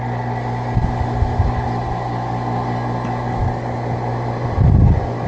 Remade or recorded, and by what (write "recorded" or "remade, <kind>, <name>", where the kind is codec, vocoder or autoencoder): recorded